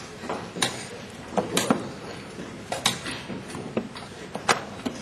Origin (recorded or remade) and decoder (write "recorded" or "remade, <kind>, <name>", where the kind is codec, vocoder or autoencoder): recorded